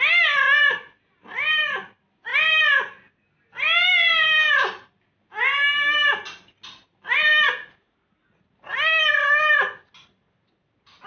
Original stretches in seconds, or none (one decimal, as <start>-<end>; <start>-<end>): 0.0-11.1